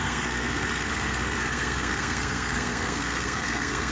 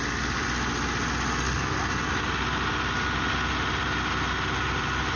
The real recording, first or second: second